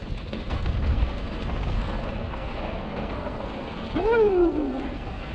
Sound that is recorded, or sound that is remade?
remade